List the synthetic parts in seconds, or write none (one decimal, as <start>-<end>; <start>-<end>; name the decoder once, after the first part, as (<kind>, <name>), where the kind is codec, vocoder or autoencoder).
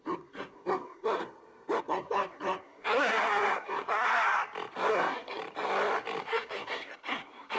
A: 0.0-1.2 (codec, SNAC); 1.8-4.4; 4.9-5.4; 6.2-7.6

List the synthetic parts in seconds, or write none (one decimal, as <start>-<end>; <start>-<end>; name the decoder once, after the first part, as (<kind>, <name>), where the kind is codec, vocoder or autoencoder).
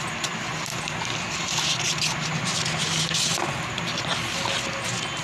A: none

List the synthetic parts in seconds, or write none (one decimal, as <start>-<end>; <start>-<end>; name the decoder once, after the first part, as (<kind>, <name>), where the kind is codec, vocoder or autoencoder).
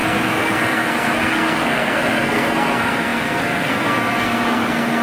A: 0.0-5.0 (codec, SNAC)